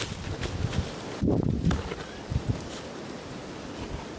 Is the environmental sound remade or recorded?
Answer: recorded